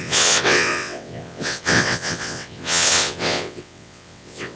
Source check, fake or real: fake